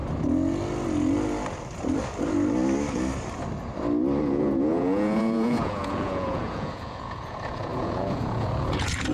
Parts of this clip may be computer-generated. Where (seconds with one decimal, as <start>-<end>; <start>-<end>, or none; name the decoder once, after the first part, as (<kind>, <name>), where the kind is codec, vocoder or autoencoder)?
4.2-9.1 (vocoder, Vocos)

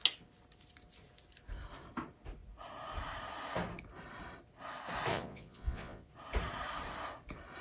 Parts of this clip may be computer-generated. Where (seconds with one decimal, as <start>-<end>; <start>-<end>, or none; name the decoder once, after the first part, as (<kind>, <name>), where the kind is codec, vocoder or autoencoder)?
5.1-6.1 (vocoder, Vocos)